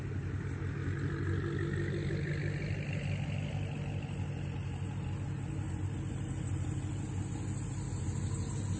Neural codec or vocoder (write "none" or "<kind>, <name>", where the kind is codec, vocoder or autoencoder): none